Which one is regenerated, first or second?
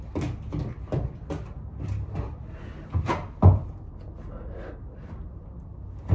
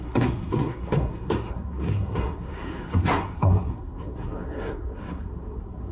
second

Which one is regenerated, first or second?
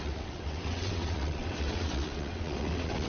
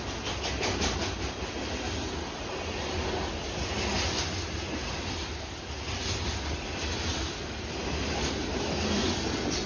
first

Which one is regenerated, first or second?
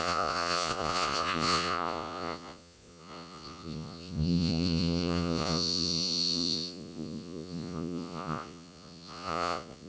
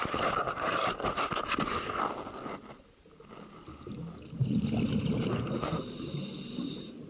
first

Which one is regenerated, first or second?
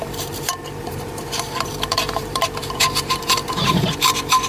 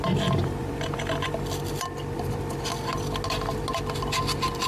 first